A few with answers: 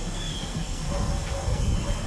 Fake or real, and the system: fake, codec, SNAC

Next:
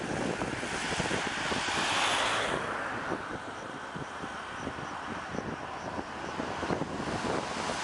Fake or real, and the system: real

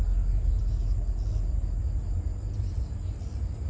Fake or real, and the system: real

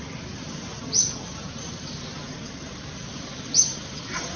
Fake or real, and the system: real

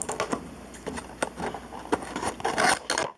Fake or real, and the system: real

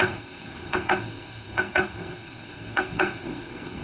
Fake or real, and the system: fake, codec, SNAC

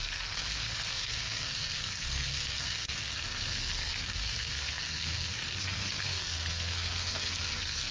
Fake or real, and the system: fake, codec, SNAC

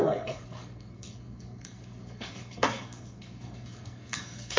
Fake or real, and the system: fake, codec, SNAC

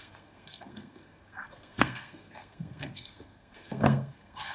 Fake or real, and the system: fake, codec, SNAC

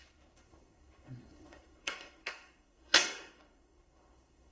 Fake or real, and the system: fake, codec, SNAC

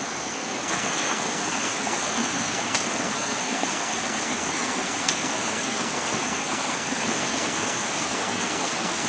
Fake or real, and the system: fake, codec, SNAC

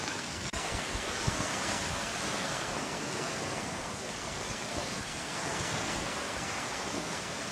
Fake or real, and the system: fake, codec, SNAC